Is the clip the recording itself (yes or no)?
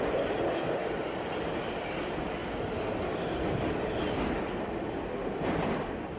yes